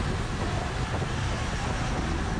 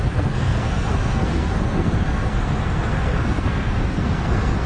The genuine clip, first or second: first